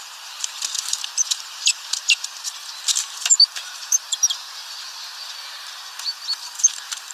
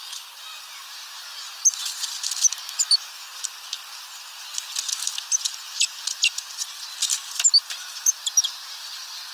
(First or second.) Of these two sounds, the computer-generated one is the first